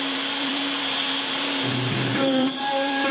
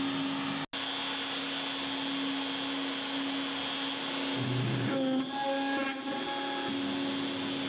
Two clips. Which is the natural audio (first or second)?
second